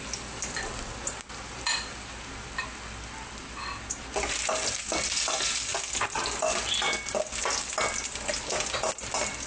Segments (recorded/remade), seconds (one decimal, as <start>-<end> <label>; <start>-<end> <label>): 0.0-9.5 recorded